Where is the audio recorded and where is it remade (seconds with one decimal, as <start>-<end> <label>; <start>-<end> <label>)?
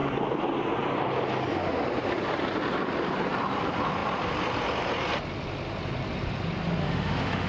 0.0-6.8 recorded; 6.8-7.5 remade